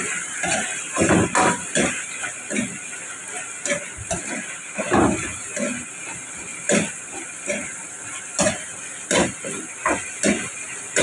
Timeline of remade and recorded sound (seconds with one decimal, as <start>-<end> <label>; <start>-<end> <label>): 0.0-11.0 recorded